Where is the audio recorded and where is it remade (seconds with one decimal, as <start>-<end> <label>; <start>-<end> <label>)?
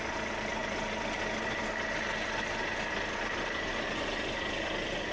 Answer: 0.0-5.1 recorded